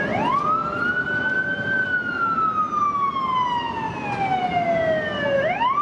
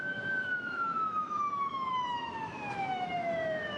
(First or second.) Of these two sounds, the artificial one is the second